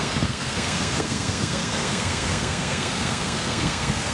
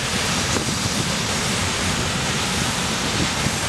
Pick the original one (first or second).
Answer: second